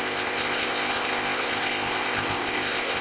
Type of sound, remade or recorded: remade